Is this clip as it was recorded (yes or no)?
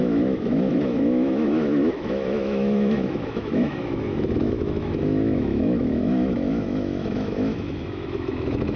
no